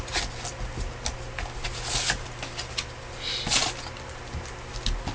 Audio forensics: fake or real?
real